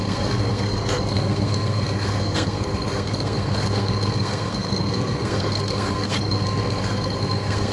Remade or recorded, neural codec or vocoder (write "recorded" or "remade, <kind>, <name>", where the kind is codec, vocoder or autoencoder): remade, codec, SNAC